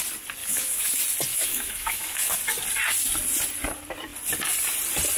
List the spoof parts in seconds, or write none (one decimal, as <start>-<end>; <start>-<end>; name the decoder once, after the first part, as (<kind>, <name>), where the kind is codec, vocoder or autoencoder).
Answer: 0.4-0.9 (autoencoder, DAC-VAE); 1.3-2.4